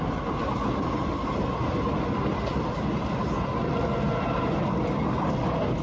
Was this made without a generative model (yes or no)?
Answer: yes